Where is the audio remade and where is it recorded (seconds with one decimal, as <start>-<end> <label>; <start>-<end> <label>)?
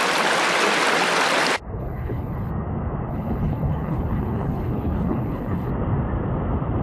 0.0-1.8 recorded; 1.8-2.5 remade; 2.5-3.1 recorded; 3.1-5.7 remade; 5.7-6.8 recorded